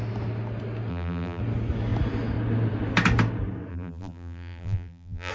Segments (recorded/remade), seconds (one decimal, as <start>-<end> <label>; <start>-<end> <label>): 0.0-0.9 recorded; 0.9-1.4 remade; 1.4-3.7 recorded; 3.7-5.3 remade